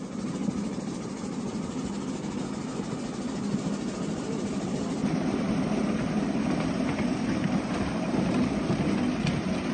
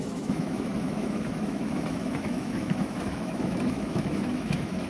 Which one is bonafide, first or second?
first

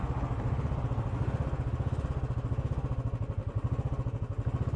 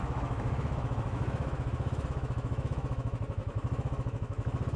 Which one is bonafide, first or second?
first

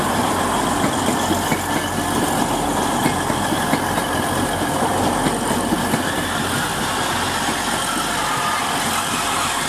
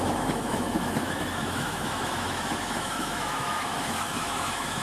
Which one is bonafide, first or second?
first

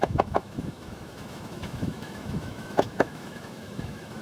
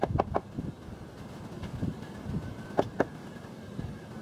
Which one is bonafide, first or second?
second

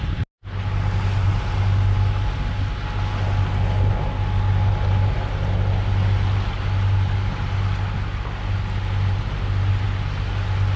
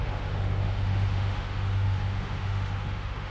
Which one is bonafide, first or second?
first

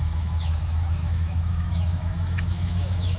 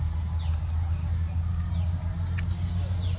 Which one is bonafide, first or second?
second